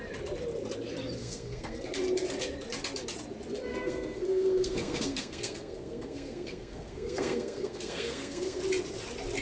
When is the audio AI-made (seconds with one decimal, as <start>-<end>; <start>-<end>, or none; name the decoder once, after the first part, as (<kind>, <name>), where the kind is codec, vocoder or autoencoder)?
1.2-1.8 (codec, SNAC); 3.7-8.6